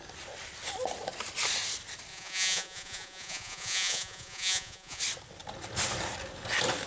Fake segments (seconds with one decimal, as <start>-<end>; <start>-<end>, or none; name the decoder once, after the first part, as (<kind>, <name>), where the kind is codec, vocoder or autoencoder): 2.1-5.0 (vocoder, Vocos)